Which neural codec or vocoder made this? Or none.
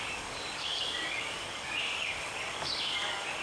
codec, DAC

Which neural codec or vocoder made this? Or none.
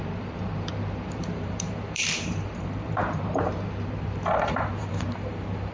vocoder, BigVGAN v2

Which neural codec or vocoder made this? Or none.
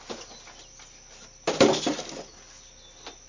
none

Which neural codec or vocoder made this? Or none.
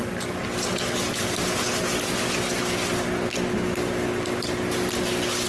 none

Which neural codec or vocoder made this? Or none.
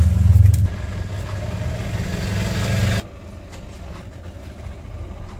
none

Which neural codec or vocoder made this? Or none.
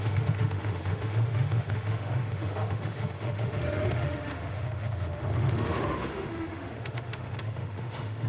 autoencoder, DAC-VAE